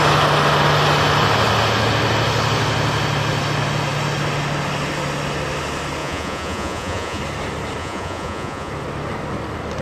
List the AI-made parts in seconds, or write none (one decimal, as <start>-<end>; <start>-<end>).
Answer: 6.0-7.2; 7.8-8.7